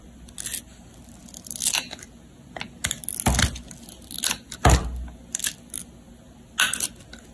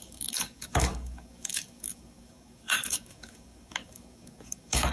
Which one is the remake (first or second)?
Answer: second